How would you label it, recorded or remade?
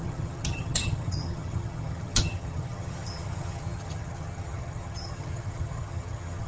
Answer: remade